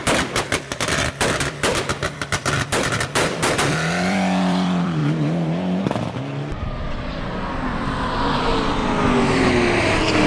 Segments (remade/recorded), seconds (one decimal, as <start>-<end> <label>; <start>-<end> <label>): 0.0-6.5 remade; 6.5-7.7 recorded; 7.7-8.8 remade; 8.8-9.8 recorded; 9.8-10.3 remade